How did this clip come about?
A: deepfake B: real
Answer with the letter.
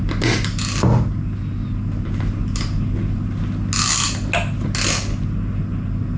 B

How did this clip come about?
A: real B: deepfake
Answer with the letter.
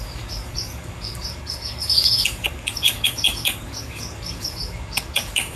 B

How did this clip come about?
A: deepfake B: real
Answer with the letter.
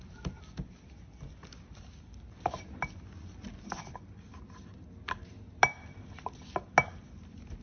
B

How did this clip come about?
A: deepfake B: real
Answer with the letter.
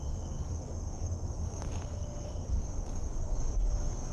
A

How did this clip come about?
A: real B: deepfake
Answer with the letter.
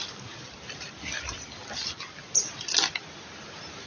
A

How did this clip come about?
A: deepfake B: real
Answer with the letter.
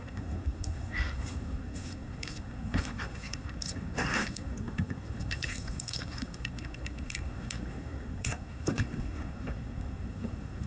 A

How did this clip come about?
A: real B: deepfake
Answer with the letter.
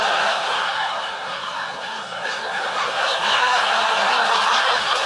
B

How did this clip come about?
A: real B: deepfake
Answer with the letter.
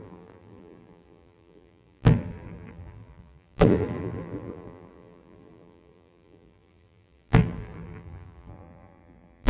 B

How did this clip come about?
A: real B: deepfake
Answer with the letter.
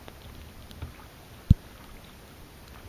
A